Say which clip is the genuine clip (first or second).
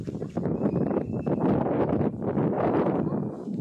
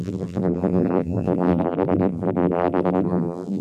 first